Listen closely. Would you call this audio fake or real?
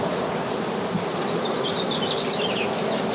real